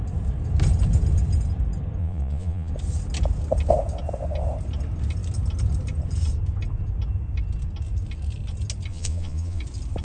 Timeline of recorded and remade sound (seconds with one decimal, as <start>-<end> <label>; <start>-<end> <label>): 0.0-2.0 recorded; 2.0-2.7 remade; 2.7-8.9 recorded; 8.9-9.6 remade; 9.6-10.0 recorded